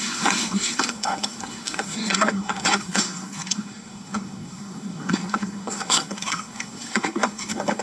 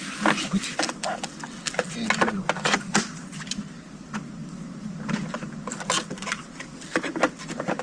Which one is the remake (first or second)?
first